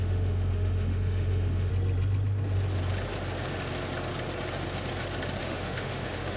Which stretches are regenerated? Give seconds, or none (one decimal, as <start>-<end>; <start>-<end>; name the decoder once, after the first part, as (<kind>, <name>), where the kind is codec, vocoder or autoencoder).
0.0-1.7 (autoencoder, DAC-VAE); 5.4-6.4